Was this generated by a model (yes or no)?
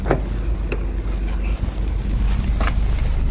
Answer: no